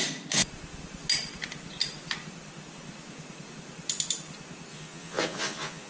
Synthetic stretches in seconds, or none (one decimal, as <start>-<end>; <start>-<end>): 4.7-5.9